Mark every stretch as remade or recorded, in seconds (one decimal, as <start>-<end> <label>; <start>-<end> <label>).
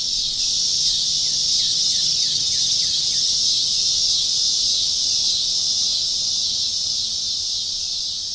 0.0-1.7 recorded; 1.7-3.3 remade; 3.3-8.3 recorded